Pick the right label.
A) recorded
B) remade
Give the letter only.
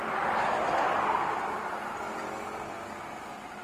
A